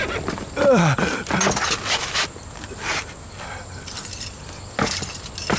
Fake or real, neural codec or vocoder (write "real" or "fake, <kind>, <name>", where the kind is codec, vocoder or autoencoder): real